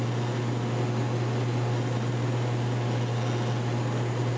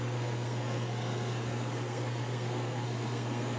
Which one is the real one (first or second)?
first